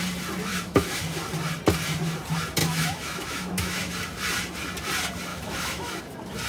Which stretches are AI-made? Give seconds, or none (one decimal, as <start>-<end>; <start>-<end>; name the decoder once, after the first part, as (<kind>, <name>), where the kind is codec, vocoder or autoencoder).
0.5-1.0 (autoencoder, DAC-VAE); 2.6-3.9; 5.3-6.0